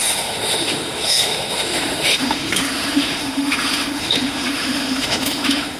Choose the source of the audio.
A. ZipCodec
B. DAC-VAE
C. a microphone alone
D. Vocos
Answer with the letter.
B